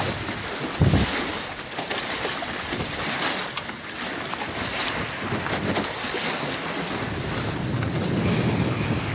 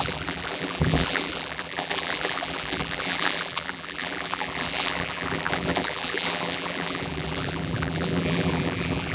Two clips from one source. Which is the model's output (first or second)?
second